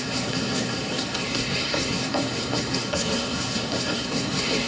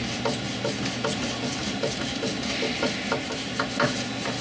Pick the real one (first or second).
second